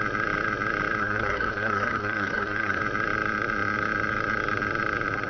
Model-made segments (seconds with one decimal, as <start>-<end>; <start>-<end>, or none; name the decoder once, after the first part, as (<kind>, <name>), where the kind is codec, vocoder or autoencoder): 1.0-2.8 (codec, SNAC)